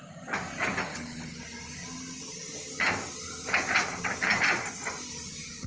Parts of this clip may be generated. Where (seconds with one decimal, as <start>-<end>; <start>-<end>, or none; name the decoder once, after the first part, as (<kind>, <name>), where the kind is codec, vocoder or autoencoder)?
0.9-1.4 (codec, HILCodec)